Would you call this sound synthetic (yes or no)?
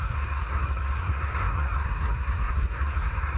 yes